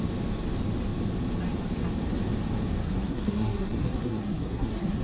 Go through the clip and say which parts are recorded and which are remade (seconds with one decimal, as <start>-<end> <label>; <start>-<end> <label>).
0.0-2.8 recorded; 2.8-5.0 remade